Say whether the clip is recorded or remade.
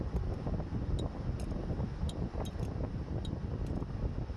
recorded